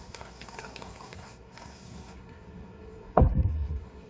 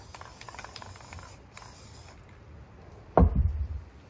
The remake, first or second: first